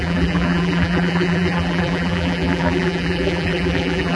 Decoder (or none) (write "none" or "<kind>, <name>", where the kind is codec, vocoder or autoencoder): vocoder, BigVGAN v2